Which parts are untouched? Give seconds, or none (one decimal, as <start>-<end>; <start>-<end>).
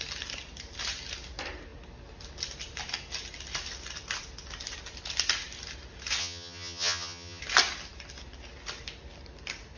0.0-6.2; 7.4-9.8